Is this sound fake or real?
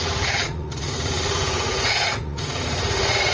fake